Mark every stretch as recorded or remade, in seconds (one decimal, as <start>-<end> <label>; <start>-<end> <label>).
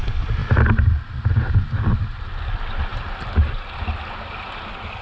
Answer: 0.0-2.9 recorded; 2.9-3.8 remade; 3.8-5.0 recorded